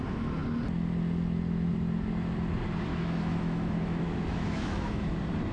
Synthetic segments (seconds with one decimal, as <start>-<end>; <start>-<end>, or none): 2.9-5.0